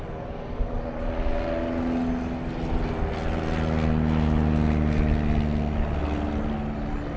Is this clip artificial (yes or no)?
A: no